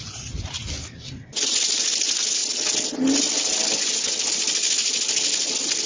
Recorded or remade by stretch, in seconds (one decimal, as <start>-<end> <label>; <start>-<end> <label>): 0.0-5.9 recorded